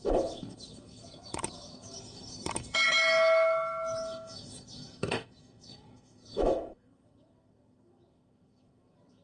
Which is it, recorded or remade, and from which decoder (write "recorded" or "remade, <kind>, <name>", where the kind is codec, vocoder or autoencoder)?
remade, autoencoder, DAC-VAE